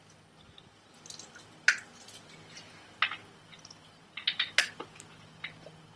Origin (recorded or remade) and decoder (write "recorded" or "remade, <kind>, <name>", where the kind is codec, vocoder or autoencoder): recorded